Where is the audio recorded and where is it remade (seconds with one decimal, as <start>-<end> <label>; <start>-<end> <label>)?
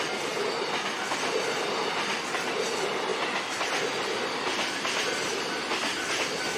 0.0-6.6 recorded